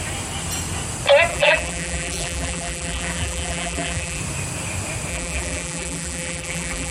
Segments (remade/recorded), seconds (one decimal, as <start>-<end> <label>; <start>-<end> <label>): 0.0-1.3 recorded; 1.3-4.2 remade; 4.2-5.1 recorded; 5.1-6.9 remade